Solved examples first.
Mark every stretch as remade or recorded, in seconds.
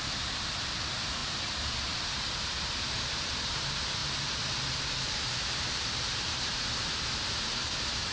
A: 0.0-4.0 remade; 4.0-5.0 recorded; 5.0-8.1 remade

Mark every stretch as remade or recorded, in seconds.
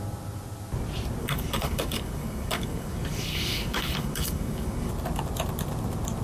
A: 0.0-1.2 recorded; 1.2-4.9 remade; 4.9-6.2 recorded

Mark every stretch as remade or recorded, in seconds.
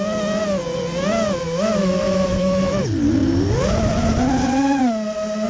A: 0.0-1.8 recorded; 1.8-2.8 remade; 2.8-5.5 recorded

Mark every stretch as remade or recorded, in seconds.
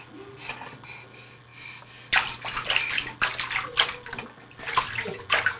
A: 0.0-5.6 recorded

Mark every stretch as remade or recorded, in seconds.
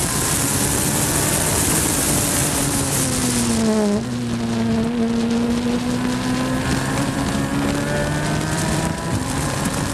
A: 0.0-1.5 recorded; 1.5-3.2 remade; 3.2-6.9 recorded; 6.9-7.5 remade; 7.5-8.5 recorded; 8.5-9.9 remade